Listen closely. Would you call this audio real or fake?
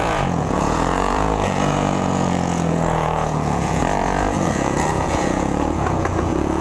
fake